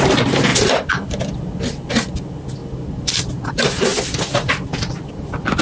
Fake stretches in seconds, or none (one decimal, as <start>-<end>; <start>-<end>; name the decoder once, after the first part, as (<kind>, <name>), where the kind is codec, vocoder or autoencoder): none